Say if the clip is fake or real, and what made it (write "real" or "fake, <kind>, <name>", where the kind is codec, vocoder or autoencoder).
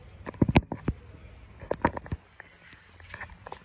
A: real